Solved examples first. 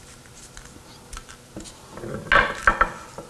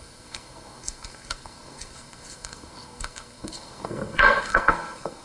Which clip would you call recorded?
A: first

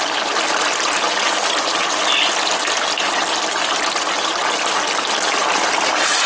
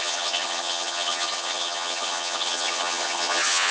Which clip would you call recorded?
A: first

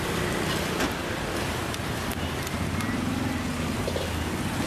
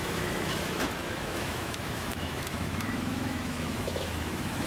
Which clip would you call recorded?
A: first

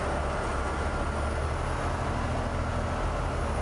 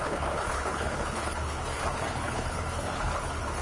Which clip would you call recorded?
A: first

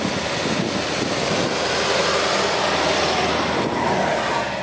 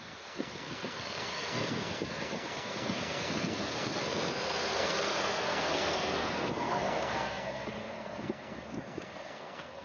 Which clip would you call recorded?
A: first